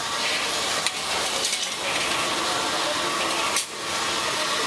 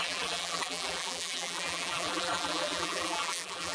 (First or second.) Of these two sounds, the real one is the first